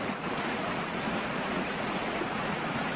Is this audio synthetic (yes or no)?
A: yes